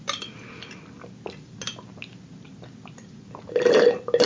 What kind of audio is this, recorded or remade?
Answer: recorded